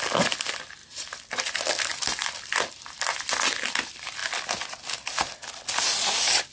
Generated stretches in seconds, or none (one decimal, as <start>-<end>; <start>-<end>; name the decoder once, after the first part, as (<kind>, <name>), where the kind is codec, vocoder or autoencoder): 0.0-4.2 (vocoder, BigVGAN v2)